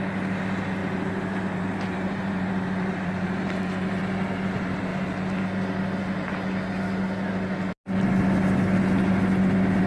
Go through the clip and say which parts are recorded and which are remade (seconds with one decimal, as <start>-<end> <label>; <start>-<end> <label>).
0.0-0.8 recorded; 0.8-4.0 remade; 4.0-9.9 recorded